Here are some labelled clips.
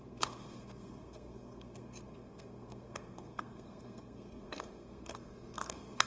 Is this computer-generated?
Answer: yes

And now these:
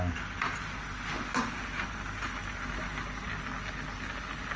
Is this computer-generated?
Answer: no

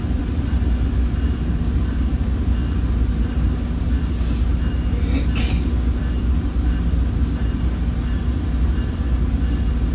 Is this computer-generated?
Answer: no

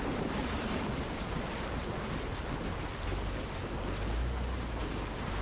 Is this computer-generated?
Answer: no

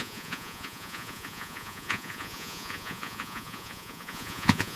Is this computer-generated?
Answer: yes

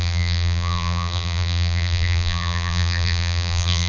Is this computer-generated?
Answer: yes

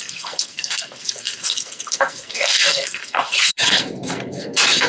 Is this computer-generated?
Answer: yes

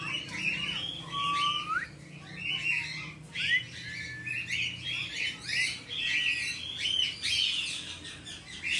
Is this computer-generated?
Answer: no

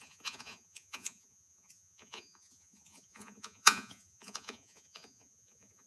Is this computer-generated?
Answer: yes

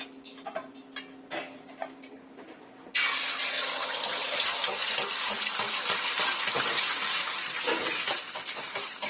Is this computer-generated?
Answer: no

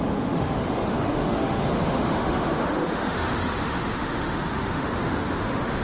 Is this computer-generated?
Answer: yes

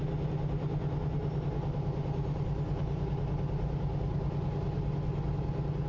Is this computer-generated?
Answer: no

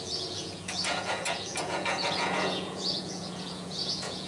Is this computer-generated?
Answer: yes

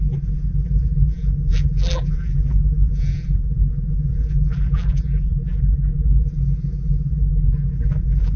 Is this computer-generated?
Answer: yes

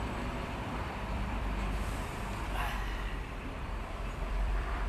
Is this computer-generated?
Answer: yes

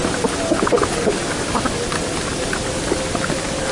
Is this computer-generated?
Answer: no